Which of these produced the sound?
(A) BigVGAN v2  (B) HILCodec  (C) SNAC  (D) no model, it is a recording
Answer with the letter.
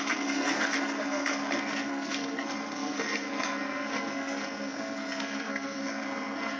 C